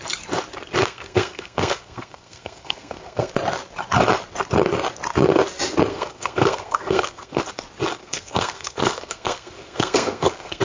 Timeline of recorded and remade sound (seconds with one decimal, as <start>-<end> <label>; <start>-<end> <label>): 0.0-0.8 recorded; 0.8-3.3 remade; 3.3-5.9 recorded; 5.9-7.4 remade; 7.4-8.0 recorded; 8.0-10.6 remade